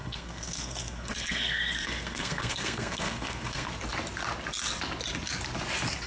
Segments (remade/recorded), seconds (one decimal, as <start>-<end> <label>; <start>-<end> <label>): 0.0-3.7 remade; 3.7-6.1 recorded